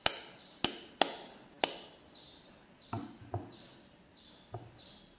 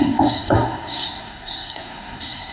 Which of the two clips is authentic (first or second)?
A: first